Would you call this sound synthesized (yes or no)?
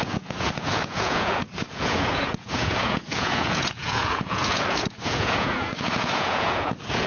yes